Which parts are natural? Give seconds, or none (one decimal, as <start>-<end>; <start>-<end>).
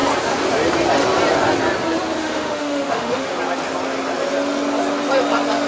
0.0-2.2; 3.3-5.7